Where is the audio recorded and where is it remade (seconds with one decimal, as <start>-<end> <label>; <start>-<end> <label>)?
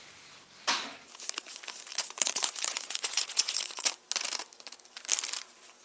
0.0-1.9 recorded; 1.9-3.9 remade; 3.9-5.8 recorded